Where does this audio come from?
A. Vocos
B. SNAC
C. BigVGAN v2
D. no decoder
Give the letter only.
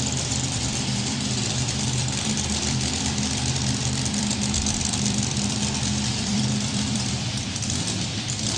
C